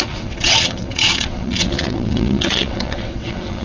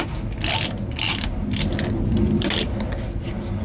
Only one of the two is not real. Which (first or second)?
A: first